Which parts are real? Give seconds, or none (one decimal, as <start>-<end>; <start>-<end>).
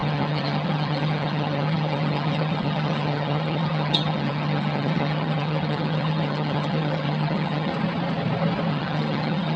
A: 7.7-8.7